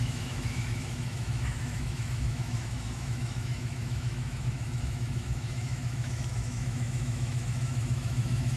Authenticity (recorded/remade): remade